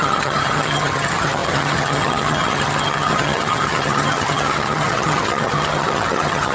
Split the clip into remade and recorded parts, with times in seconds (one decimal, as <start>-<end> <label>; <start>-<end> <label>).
0.0-6.5 remade